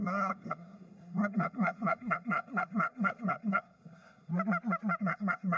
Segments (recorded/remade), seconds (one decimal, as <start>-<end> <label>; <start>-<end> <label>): 0.0-4.3 remade; 4.3-5.0 recorded; 5.0-5.6 remade